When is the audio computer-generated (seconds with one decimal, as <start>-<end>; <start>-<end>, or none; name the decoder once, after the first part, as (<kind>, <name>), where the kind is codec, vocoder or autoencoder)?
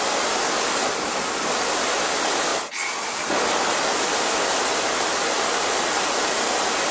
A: none